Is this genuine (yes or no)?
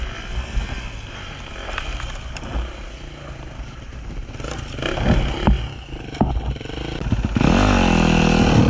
yes